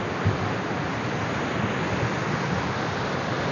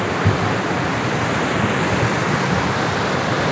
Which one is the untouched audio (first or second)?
first